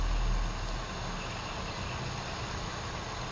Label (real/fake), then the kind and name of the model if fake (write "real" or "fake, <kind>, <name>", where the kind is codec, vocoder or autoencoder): real